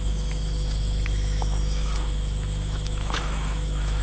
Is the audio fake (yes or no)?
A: yes